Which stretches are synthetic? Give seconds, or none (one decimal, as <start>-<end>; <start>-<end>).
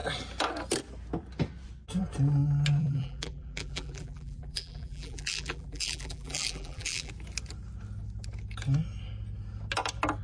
2.8-7.1